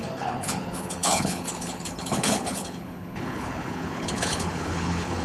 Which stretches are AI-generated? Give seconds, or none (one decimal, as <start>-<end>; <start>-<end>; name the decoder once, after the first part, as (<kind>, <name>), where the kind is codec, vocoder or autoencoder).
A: 0.0-5.2 (codec, HILCodec)